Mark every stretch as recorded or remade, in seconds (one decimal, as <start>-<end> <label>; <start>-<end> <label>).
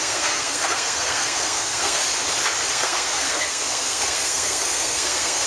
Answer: 0.0-2.0 remade; 2.0-2.7 recorded; 2.7-5.5 remade